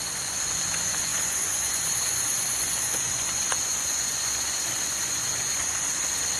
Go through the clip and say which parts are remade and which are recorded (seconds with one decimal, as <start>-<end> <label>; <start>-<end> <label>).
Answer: 0.0-6.4 remade